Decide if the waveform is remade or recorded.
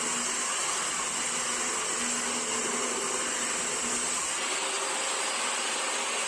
recorded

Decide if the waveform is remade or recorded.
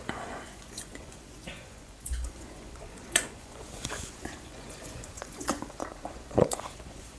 remade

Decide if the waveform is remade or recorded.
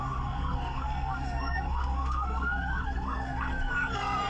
remade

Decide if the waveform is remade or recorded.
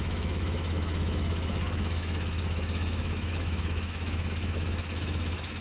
remade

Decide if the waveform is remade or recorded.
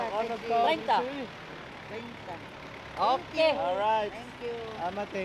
recorded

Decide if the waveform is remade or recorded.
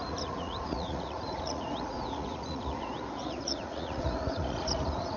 remade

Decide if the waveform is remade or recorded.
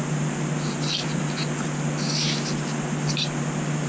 recorded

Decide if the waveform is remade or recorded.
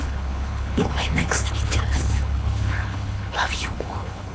remade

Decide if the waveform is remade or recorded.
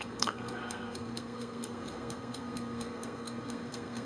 remade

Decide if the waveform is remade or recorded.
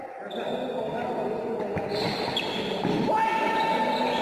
recorded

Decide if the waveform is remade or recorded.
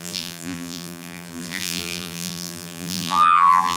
remade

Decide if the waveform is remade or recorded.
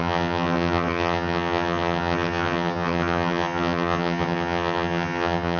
remade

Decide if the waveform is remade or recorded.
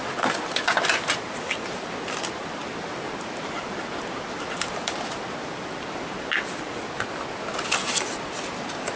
recorded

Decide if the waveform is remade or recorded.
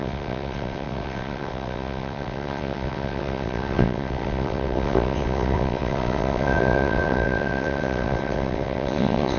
remade